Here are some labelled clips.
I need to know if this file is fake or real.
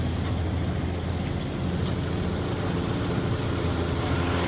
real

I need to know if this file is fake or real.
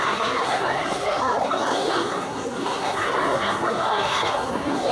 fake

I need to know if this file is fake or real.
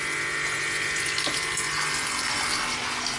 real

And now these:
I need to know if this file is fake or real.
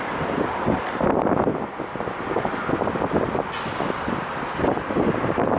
real